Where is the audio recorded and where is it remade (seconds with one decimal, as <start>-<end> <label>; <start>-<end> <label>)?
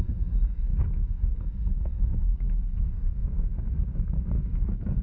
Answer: 0.0-5.0 remade